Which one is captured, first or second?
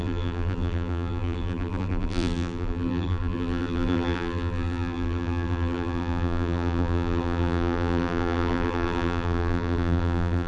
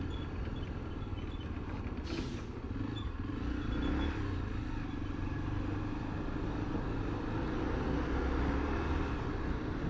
second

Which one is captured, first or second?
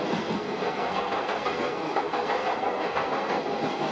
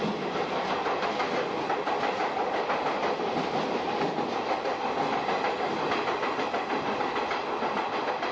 second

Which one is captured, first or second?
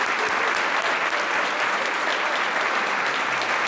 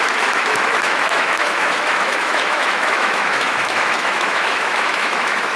first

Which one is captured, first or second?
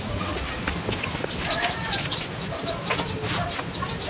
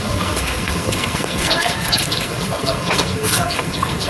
first